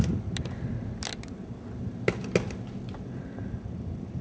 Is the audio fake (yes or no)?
no